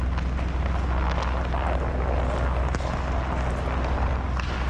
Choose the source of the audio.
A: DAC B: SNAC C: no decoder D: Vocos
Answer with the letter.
C